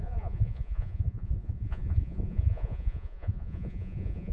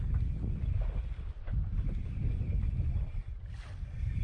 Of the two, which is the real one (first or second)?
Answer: second